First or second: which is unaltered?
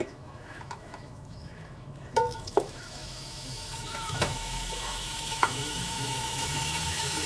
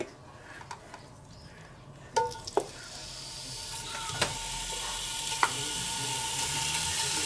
second